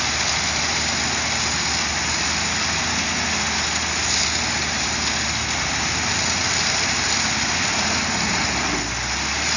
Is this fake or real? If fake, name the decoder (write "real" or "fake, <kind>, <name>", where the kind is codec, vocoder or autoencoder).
real